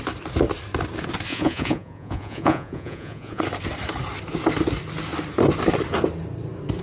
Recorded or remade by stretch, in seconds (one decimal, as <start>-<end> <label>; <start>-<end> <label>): 0.0-1.3 recorded; 1.3-3.4 remade; 3.4-6.8 recorded